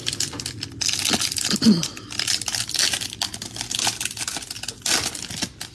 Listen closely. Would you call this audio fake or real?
real